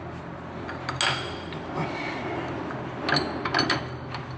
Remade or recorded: recorded